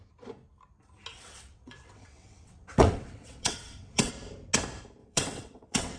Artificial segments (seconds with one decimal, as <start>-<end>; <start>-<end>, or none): 1.1-4.1; 5.0-6.0